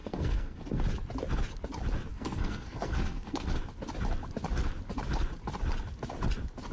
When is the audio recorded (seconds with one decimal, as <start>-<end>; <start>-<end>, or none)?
0.8-2.1; 3.5-6.7